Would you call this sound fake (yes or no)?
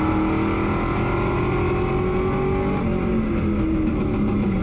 no